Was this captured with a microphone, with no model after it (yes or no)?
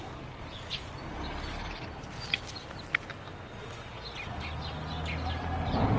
yes